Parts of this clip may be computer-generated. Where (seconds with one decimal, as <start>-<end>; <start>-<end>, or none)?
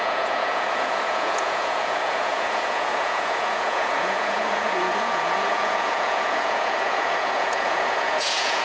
0.0-8.6